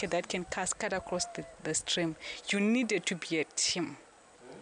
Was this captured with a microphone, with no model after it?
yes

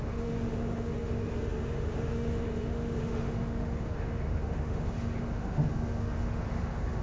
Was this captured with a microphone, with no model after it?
no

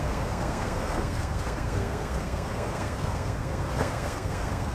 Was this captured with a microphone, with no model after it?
no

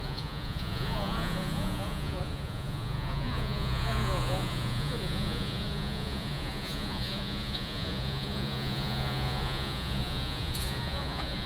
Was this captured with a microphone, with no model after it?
no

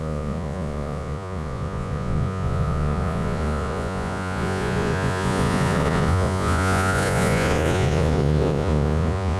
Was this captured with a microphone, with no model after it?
no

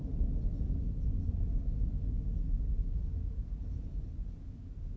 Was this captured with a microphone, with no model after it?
yes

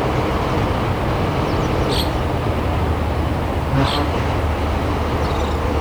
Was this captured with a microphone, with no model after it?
yes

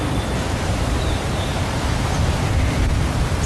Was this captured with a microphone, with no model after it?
yes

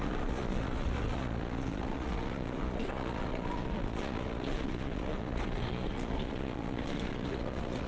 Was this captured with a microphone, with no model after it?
no